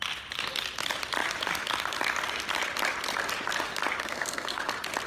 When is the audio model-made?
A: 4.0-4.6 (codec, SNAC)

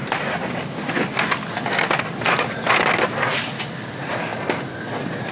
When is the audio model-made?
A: none